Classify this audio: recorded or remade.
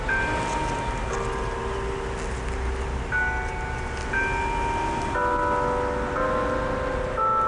recorded